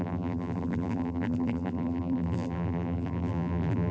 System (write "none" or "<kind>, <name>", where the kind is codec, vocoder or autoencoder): vocoder, BigVGAN v2